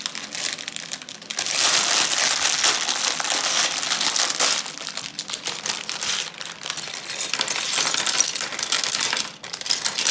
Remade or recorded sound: recorded